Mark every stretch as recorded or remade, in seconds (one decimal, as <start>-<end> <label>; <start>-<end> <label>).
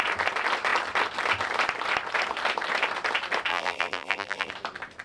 0.0-3.5 recorded; 3.5-4.5 remade; 4.5-5.0 recorded